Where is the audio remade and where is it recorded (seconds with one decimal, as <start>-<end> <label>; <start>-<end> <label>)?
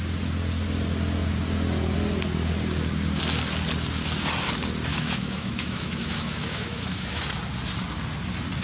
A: 0.0-4.9 recorded; 4.9-7.2 remade; 7.2-8.6 recorded